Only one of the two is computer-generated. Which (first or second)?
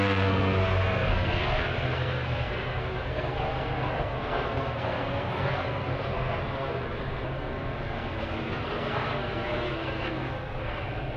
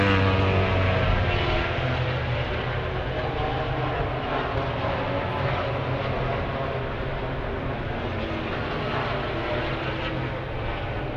first